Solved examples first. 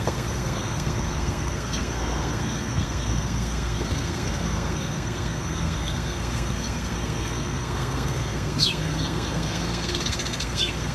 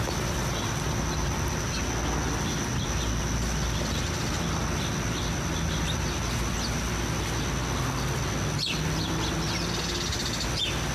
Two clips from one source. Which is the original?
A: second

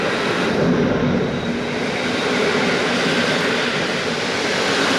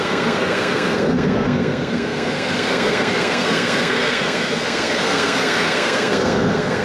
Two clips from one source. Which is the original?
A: first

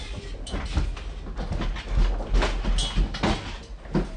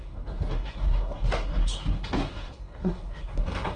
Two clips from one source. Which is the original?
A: first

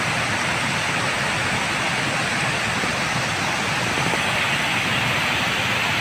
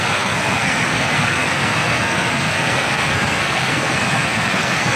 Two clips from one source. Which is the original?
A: first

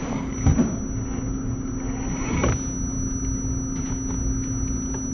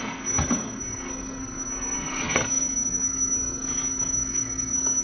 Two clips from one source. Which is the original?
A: first